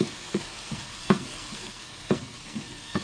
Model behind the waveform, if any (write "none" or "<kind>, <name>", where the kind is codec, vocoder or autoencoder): codec, SNAC